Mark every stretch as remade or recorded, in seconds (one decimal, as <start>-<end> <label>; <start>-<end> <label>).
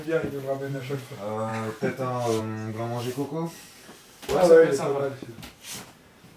0.0-6.4 recorded